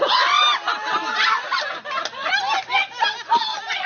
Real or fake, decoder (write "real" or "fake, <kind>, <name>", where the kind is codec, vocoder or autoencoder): real